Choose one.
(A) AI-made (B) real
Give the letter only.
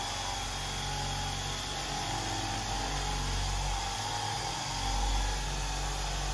B